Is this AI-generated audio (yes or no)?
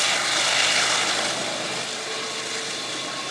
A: no